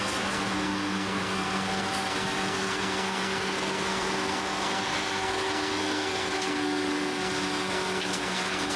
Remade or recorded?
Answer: remade